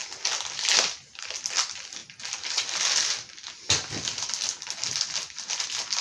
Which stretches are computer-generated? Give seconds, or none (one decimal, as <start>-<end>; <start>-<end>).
none